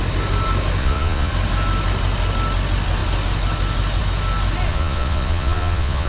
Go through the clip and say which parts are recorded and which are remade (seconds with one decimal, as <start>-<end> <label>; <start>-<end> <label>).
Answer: 0.0-0.8 recorded; 0.8-1.3 remade; 1.3-4.7 recorded; 4.7-6.1 remade